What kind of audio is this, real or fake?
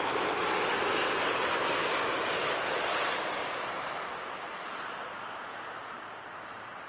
real